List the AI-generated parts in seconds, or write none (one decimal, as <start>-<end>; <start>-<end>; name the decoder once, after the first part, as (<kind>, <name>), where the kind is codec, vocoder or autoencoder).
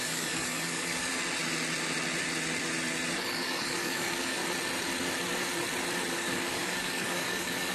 0.0-1.1 (codec, DAC); 3.1-4.4; 6.1-7.7